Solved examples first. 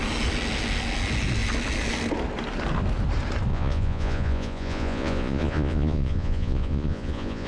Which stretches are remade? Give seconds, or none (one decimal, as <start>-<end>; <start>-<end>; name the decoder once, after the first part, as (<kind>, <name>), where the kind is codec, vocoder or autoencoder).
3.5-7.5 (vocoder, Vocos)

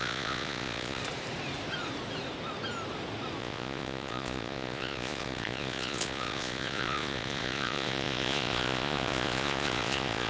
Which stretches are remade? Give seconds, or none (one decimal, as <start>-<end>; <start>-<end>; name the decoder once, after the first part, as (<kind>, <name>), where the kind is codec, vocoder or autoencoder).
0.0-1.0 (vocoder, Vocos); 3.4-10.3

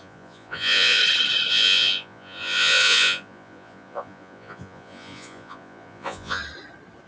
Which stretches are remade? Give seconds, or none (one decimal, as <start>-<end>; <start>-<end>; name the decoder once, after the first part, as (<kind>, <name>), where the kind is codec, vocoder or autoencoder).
0.0-1.0 (vocoder, Vocos); 1.5-6.4